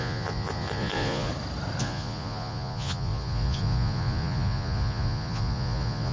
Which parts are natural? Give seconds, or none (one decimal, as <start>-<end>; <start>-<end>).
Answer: 1.3-1.8